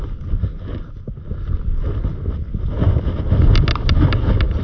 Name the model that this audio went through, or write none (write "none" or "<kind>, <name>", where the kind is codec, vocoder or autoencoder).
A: none